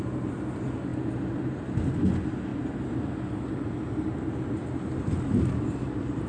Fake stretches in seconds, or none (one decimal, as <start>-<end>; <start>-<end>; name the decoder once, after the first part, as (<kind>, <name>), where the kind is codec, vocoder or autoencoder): none